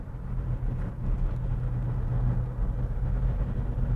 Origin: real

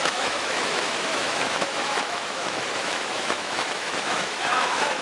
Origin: fake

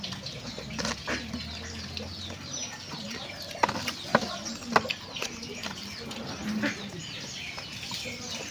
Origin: real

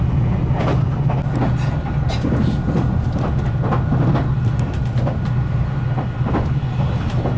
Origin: real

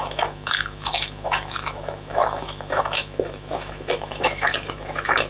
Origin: fake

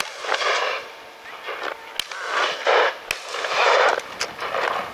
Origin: real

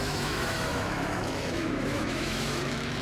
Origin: fake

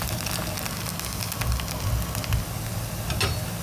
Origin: real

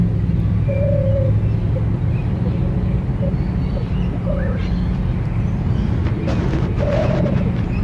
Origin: real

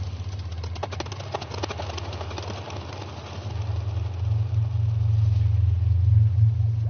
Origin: real